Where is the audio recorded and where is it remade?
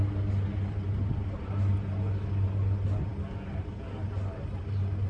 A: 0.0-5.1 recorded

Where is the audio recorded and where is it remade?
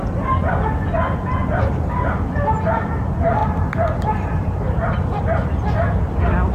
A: 0.0-1.4 recorded; 1.4-1.9 remade; 1.9-3.4 recorded; 3.4-5.2 remade; 5.2-6.5 recorded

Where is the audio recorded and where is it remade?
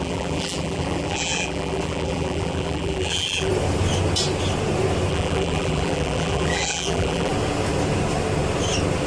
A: 0.0-3.5 remade; 3.5-5.1 recorded; 5.1-7.3 remade; 7.3-9.1 recorded